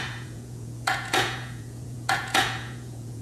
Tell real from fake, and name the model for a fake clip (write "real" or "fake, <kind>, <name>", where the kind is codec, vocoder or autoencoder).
fake, vocoder, Vocos